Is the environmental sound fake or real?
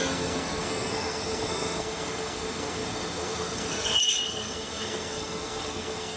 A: fake